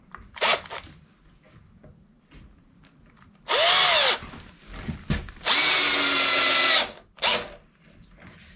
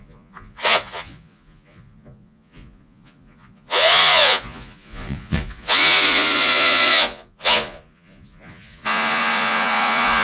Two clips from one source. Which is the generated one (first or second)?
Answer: second